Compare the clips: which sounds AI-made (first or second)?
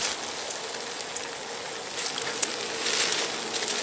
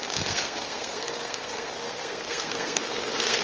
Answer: second